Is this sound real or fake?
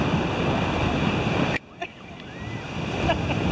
real